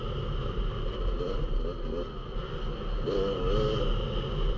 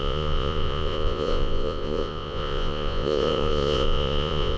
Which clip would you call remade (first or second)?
second